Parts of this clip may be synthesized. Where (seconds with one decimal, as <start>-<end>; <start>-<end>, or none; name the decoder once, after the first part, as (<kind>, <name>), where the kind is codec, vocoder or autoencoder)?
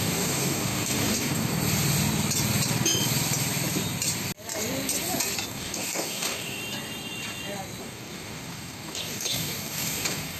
0.0-1.5 (codec, DAC); 5.5-6.6; 7.8-10.4